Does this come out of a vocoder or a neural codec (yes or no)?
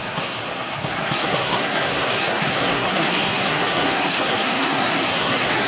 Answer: yes